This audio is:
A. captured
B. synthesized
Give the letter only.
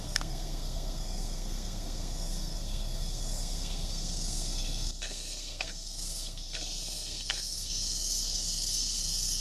B